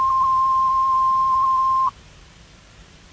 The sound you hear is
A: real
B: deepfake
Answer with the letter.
B